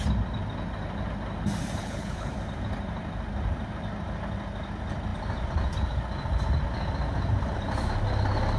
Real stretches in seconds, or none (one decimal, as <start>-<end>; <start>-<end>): 0.0-1.8; 2.3-8.6